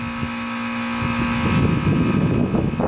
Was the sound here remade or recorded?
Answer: recorded